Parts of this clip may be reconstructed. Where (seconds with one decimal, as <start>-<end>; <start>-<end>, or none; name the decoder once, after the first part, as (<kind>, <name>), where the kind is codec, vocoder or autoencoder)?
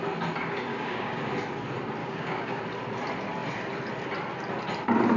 0.7-1.3 (codec, DAC); 2.0-2.6